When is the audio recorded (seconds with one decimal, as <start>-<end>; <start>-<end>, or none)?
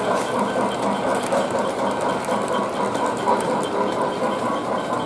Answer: 0.0-5.1